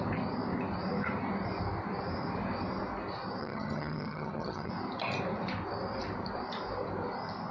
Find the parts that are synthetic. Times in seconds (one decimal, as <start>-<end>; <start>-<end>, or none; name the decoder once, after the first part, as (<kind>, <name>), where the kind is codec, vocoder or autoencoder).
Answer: 3.4-4.7 (vocoder, HiFi-GAN)